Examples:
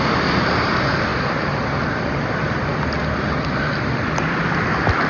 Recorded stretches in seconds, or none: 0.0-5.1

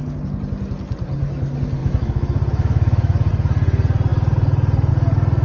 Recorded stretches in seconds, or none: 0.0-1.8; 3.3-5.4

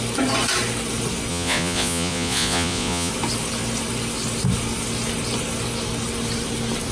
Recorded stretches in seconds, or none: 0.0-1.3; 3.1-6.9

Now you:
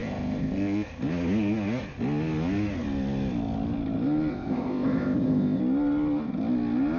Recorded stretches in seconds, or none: 1.0-4.3; 5.6-7.0